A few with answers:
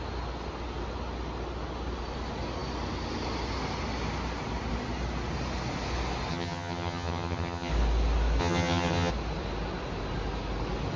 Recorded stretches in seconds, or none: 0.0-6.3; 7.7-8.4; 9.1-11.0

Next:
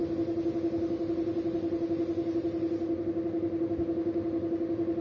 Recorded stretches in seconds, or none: 0.0-5.0

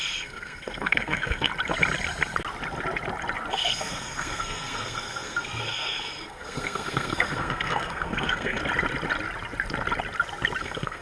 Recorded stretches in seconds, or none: 1.5-3.5; 8.6-10.6

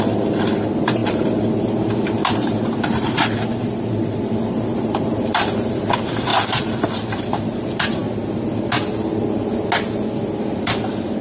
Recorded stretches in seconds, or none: 6.3-7.2; 8.0-10.5